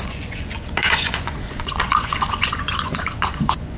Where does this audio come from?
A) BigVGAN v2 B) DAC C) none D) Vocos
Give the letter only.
D